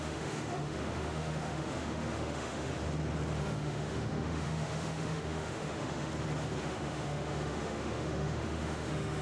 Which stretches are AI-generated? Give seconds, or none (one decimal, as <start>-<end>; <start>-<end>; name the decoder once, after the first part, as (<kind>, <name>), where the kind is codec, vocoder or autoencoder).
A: 0.0-2.7 (autoencoder, DAC-VAE); 3.4-6.1; 6.6-9.2